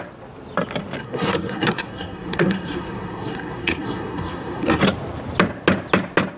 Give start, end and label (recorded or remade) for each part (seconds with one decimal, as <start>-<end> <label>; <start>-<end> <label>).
0.0-1.0 recorded; 1.0-4.8 remade; 4.8-6.4 recorded